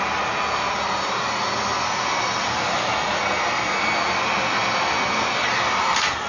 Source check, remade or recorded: recorded